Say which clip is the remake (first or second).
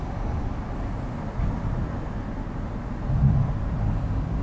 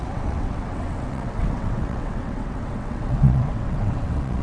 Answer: second